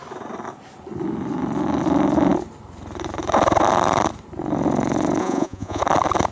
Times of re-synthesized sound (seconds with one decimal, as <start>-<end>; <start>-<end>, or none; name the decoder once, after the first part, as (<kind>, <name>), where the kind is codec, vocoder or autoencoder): 5.2-5.8 (vocoder, Vocos)